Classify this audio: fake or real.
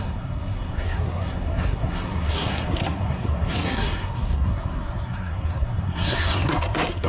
fake